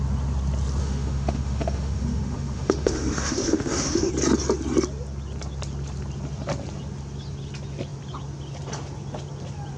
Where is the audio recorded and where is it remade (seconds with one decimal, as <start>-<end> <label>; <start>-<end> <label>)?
0.0-0.8 recorded; 0.8-4.1 remade; 4.1-9.8 recorded